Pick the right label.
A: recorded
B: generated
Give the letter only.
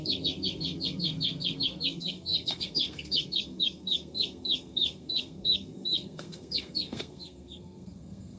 B